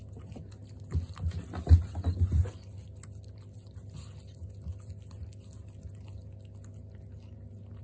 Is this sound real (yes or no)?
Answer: yes